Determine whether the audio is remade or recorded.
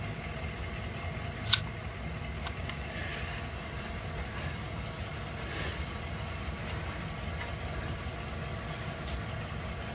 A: recorded